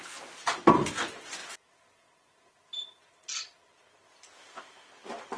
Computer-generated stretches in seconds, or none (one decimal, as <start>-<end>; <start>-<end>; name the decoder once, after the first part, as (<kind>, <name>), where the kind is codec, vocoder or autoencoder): none